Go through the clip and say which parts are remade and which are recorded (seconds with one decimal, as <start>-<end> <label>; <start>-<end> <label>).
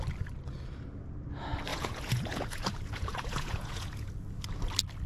0.0-1.7 recorded; 1.7-4.1 remade; 4.1-5.1 recorded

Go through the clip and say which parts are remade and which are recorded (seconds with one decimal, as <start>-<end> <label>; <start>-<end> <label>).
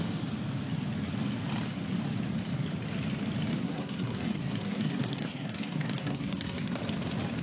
0.0-3.6 recorded; 3.6-6.8 remade; 6.8-7.4 recorded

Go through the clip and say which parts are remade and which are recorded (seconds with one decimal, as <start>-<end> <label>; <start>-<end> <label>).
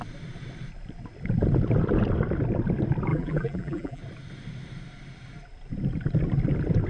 0.0-3.1 recorded; 3.1-4.0 remade; 4.0-6.9 recorded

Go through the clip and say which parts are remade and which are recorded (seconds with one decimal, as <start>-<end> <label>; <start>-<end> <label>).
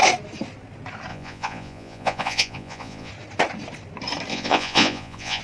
0.0-1.1 recorded; 1.1-3.1 remade; 3.1-4.3 recorded; 4.3-5.4 remade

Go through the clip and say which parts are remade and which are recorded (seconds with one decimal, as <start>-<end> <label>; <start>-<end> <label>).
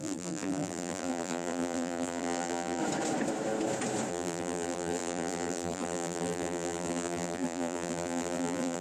0.0-2.8 remade; 2.8-4.1 recorded; 4.1-8.8 remade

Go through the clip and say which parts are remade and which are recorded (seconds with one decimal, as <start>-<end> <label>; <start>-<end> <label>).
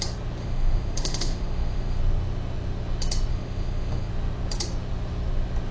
0.0-0.4 recorded; 0.4-2.0 remade; 2.0-3.3 recorded; 3.3-4.1 remade; 4.1-5.7 recorded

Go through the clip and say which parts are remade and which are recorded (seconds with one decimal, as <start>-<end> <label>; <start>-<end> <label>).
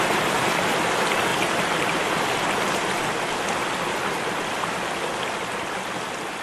0.0-6.4 recorded